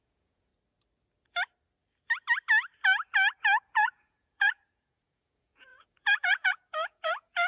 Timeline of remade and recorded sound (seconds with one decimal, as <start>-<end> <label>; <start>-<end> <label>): 0.0-0.5 remade; 0.5-3.6 recorded; 3.6-7.5 remade